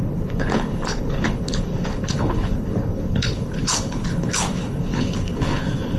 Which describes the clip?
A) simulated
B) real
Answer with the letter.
A